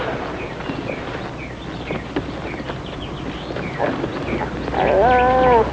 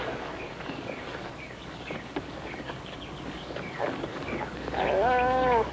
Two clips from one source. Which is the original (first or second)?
first